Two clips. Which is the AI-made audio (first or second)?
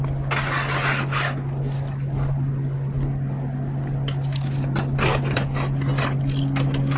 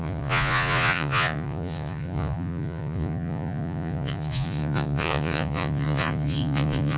second